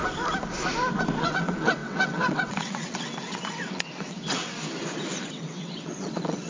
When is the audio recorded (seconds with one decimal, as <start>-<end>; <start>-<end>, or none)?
0.0-1.2; 4.4-5.3